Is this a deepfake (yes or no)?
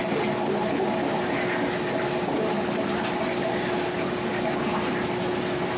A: no